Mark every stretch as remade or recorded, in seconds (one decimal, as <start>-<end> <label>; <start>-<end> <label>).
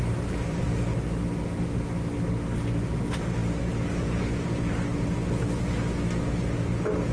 0.0-7.1 recorded